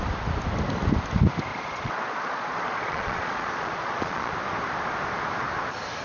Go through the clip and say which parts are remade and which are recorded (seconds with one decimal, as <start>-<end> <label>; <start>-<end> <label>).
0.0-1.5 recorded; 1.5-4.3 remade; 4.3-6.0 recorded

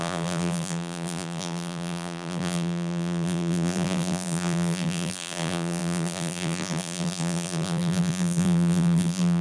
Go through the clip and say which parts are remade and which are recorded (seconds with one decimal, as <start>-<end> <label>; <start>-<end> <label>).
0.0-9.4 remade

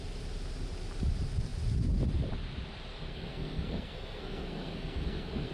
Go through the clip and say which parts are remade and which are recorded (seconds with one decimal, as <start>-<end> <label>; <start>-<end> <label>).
0.0-2.9 recorded; 2.9-5.5 remade

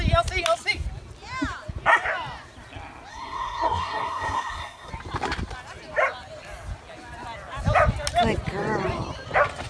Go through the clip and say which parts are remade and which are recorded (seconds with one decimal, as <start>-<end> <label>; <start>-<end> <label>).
0.0-3.1 recorded; 3.1-4.9 remade; 4.9-9.7 recorded